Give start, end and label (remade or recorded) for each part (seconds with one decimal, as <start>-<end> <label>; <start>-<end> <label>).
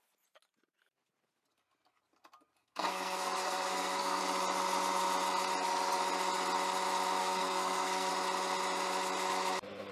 0.0-2.6 recorded; 2.6-4.2 remade; 4.2-7.2 recorded; 7.2-8.1 remade; 8.1-9.9 recorded